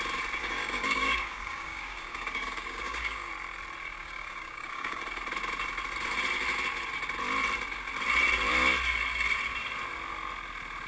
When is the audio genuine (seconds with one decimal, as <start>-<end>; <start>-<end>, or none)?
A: 0.0-0.4; 3.3-4.0; 5.0-10.9